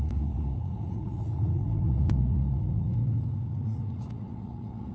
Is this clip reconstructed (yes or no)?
yes